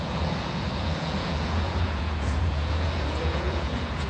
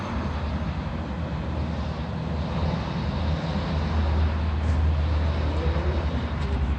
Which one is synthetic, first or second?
first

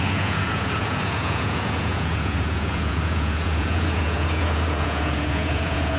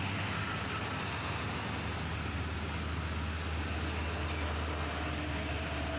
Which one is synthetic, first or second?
first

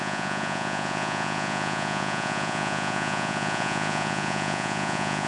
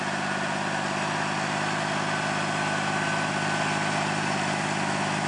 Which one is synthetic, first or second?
first